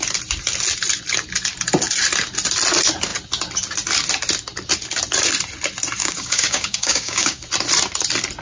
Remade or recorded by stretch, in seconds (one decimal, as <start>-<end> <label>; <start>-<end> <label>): 0.0-6.0 recorded; 6.0-7.4 remade; 7.4-8.4 recorded